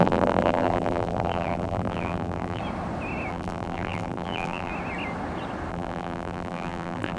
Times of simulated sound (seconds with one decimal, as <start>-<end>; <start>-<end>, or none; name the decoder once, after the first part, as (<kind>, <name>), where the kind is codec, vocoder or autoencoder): 0.0-2.6 (vocoder, BigVGAN v2); 3.3-4.7; 5.7-7.2